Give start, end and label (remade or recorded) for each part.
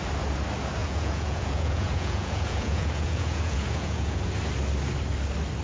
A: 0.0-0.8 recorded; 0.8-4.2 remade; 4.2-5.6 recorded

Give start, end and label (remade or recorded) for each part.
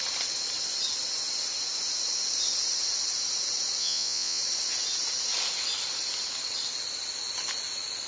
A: 0.0-3.8 recorded; 3.8-4.4 remade; 4.4-8.1 recorded